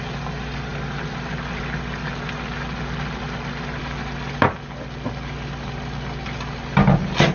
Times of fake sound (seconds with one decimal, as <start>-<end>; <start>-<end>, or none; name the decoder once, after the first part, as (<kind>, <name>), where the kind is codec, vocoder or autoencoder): none